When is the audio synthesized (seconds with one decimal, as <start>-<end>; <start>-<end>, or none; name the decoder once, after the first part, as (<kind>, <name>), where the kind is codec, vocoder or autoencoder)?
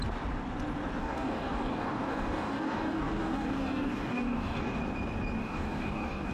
1.0-4.8 (codec, DAC); 5.4-6.3